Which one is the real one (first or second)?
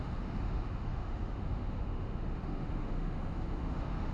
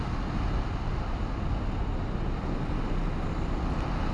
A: second